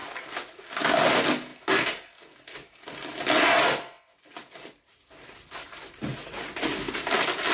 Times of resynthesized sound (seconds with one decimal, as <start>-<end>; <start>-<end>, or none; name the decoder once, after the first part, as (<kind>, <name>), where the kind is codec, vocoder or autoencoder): none